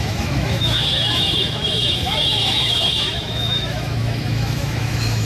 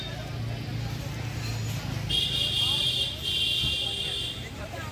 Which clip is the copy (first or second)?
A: first